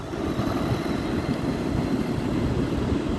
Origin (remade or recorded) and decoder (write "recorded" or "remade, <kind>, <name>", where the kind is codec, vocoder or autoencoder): recorded